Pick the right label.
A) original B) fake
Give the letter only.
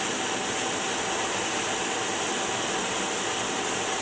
A